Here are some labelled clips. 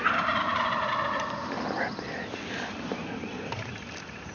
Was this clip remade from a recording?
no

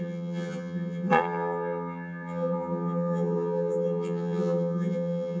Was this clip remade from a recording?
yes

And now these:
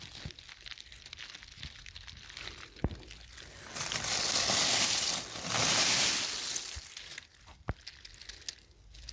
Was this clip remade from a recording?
no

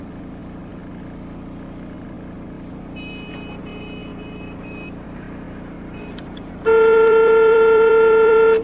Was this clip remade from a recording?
yes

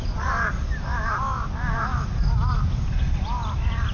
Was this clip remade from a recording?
no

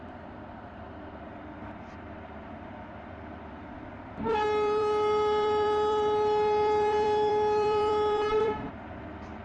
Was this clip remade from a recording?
yes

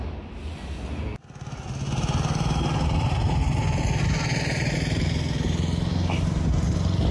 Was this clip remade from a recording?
no